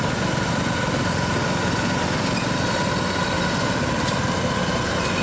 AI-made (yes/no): no